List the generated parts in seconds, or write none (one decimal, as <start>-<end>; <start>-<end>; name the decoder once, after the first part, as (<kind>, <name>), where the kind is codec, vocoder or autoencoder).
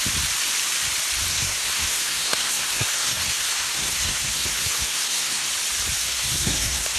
1.3-5.5 (codec, SNAC); 6.0-7.0